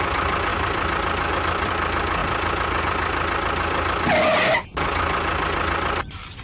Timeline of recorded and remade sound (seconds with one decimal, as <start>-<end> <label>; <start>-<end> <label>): 0.0-6.4 recorded